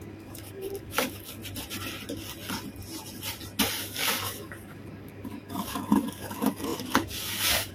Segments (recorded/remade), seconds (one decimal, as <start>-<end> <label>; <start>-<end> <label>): 0.0-1.4 remade; 1.4-3.8 recorded; 3.8-7.7 remade